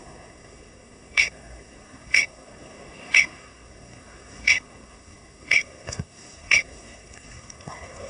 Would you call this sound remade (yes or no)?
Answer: yes